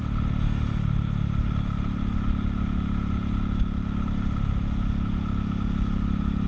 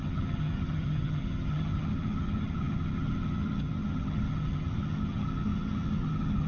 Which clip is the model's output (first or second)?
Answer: second